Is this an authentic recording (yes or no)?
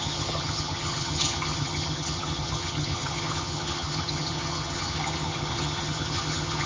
no